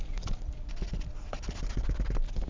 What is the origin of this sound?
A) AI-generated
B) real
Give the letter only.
B